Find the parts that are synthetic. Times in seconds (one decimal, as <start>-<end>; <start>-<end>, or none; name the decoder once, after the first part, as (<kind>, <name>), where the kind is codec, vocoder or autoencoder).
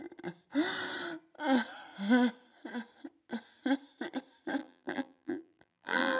4.6-6.2 (vocoder, BigVGAN v2)